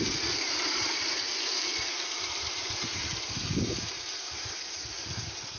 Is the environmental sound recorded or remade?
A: remade